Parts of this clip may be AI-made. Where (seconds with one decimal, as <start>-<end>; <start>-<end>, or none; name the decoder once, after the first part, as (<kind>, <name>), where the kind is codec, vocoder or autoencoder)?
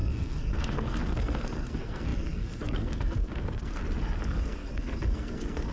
0.0-3.8 (codec, SNAC); 4.4-5.7